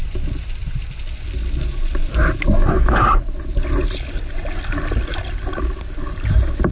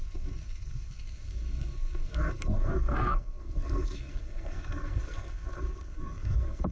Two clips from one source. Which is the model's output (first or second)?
second